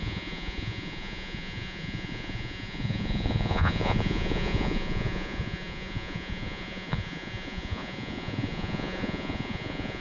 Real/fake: fake